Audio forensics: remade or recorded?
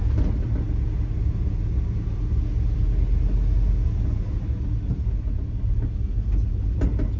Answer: recorded